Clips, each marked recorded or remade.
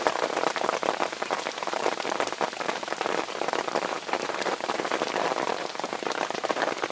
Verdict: remade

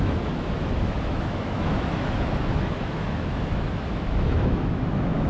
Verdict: remade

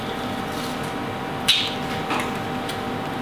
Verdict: recorded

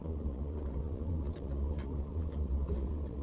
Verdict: remade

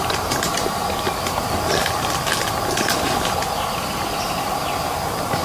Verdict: recorded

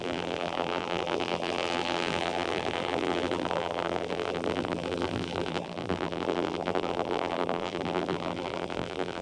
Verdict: remade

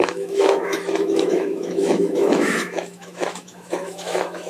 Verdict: remade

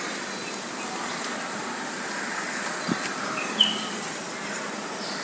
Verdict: recorded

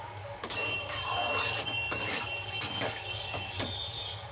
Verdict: remade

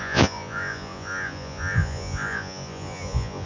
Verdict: remade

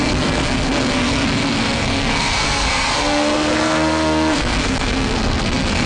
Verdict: remade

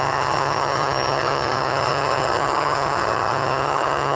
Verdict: remade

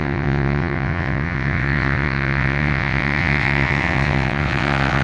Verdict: remade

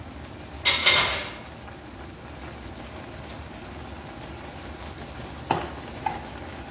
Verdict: recorded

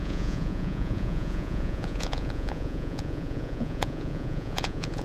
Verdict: remade